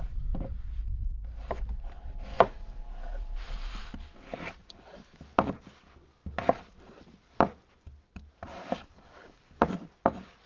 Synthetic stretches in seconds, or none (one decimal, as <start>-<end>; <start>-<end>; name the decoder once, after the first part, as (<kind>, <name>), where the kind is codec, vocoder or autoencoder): 2.3-3.0 (codec, DAC); 8.6-9.7